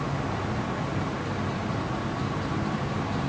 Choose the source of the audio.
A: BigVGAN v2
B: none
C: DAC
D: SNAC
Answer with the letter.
B